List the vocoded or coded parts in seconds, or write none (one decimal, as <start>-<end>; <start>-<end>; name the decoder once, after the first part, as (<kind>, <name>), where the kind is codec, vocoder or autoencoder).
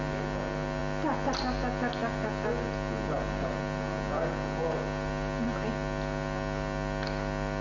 none